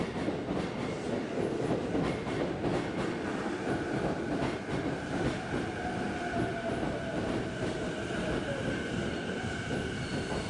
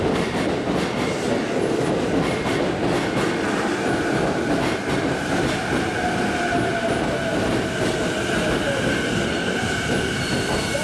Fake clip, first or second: first